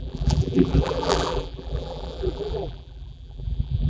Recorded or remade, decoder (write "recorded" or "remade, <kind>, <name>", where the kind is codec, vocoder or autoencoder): remade, vocoder, BigVGAN v2